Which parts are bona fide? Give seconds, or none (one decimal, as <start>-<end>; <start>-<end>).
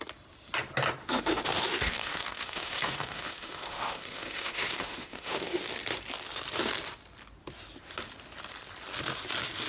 0.0-1.0; 5.7-9.7